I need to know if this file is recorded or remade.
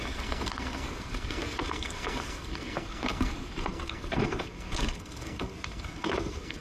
remade